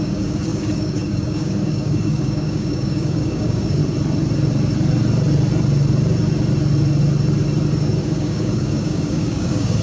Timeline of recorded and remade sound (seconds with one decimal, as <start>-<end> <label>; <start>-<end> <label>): 0.0-3.8 remade; 3.8-8.0 recorded; 8.0-9.8 remade